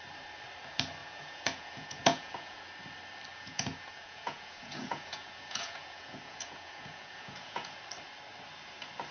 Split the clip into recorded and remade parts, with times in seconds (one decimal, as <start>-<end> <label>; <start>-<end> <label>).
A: 0.0-1.0 recorded; 1.0-2.6 remade; 2.6-3.3 recorded; 3.3-7.8 remade; 7.8-9.1 recorded